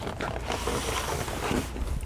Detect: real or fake real